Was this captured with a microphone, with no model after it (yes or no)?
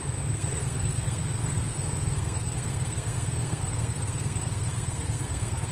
no